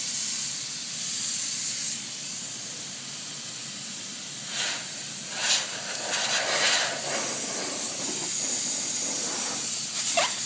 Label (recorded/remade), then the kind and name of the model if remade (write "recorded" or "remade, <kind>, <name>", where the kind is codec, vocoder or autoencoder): recorded